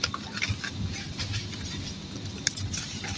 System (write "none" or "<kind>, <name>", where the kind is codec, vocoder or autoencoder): vocoder, BigVGAN v2